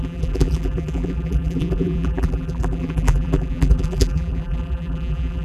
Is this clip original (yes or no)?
no